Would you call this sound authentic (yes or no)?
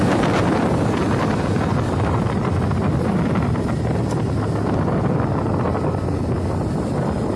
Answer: yes